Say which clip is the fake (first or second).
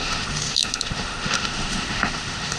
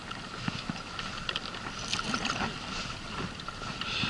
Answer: first